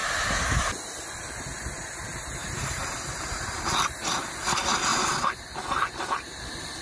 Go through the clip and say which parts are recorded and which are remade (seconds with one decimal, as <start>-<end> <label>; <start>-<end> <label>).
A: 0.0-0.7 remade; 0.7-2.4 recorded; 2.4-3.6 remade; 3.6-6.8 recorded